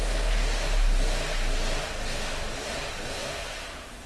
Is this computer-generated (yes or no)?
no